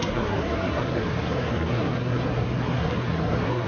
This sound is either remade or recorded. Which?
remade